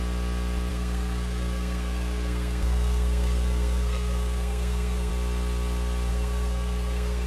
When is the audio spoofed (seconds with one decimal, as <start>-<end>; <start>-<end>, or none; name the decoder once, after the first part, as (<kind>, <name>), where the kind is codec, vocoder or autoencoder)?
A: 0.7-5.1 (codec, SNAC); 6.1-7.3